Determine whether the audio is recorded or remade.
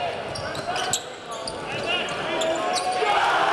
recorded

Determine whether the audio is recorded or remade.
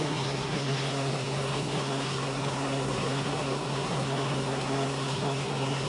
remade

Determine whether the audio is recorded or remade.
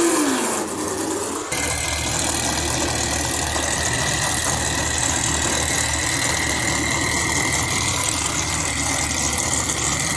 recorded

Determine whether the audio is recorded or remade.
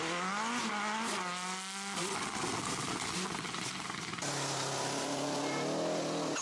recorded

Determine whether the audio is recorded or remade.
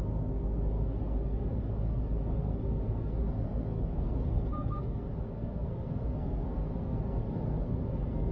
remade